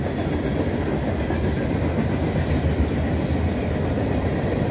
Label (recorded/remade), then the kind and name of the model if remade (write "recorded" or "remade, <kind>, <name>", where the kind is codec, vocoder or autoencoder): recorded